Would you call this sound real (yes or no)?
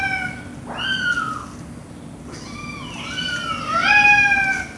yes